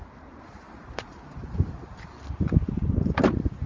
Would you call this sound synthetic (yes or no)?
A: no